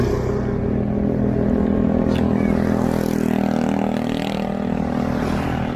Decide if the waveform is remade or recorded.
recorded